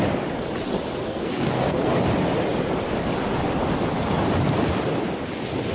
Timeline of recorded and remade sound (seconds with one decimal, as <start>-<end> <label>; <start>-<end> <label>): 0.0-1.0 recorded; 1.0-2.0 remade; 2.0-5.7 recorded